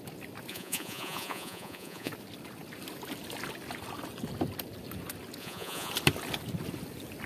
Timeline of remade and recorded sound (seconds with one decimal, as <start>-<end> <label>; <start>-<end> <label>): 0.0-0.5 recorded; 0.5-2.1 remade; 2.1-5.4 recorded; 5.4-5.9 remade; 5.9-7.3 recorded